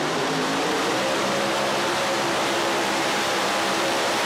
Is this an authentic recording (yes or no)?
no